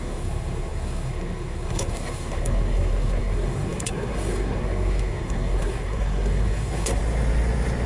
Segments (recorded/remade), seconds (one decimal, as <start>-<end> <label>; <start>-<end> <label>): 0.0-7.0 remade; 7.0-7.9 recorded